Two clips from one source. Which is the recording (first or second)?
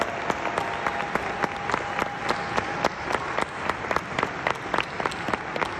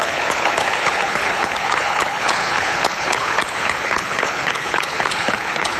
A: first